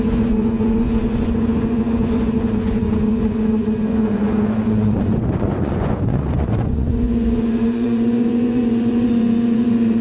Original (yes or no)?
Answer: no